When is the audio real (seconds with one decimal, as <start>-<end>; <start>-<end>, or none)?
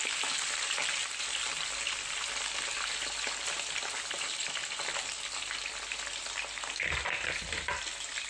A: 0.0-8.3